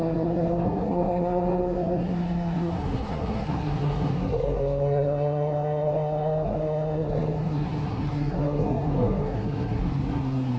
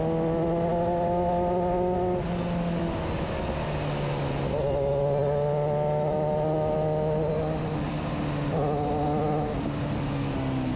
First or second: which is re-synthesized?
first